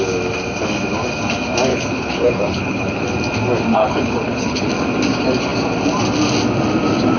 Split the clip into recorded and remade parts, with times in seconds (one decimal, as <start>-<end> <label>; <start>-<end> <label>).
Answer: 0.0-1.7 recorded; 1.7-3.0 remade; 3.0-3.8 recorded; 3.8-4.7 remade; 4.7-7.2 recorded